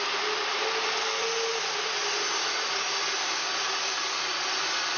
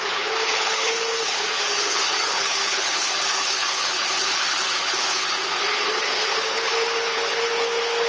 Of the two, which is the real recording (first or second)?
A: first